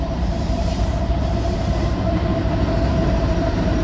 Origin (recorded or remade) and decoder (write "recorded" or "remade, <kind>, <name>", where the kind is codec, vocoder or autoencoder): remade, vocoder, BigVGAN v2